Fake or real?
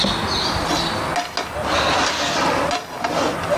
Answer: real